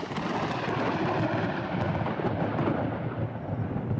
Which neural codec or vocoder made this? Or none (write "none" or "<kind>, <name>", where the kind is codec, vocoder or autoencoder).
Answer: none